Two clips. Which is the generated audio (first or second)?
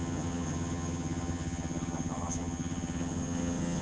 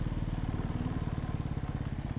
first